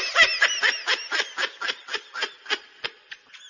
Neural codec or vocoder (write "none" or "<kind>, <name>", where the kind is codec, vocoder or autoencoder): none